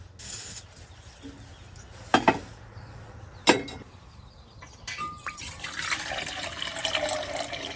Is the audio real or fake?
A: real